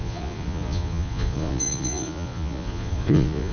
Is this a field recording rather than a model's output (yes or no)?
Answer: no